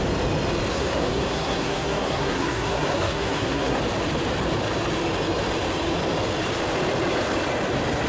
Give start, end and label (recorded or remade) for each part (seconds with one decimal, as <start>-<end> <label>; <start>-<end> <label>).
0.0-0.7 recorded; 0.7-3.8 remade; 3.8-8.1 recorded